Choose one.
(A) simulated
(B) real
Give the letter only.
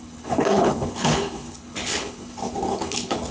A